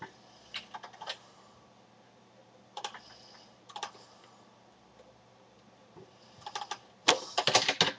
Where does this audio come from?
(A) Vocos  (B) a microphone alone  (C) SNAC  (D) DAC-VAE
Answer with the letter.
B